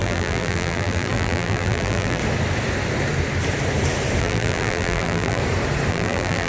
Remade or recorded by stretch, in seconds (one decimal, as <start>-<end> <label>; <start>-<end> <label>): 0.0-2.2 remade; 2.2-4.2 recorded; 4.2-5.4 remade; 5.4-5.9 recorded; 5.9-6.5 remade